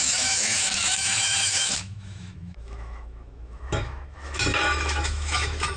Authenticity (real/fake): fake